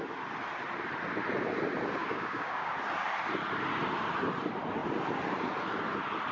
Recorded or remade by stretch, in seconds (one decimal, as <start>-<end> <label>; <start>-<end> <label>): 0.0-2.0 recorded; 2.0-2.7 remade; 2.7-6.3 recorded